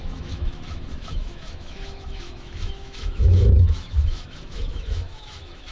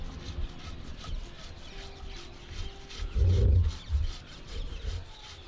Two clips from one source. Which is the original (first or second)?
second